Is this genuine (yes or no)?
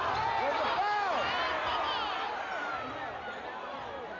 yes